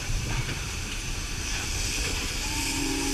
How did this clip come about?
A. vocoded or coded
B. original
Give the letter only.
A